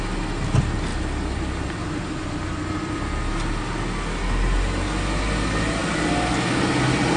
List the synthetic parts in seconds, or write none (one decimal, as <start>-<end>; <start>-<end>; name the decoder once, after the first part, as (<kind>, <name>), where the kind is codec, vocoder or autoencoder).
none